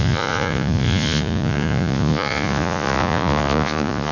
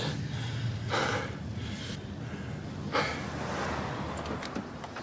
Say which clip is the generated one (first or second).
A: first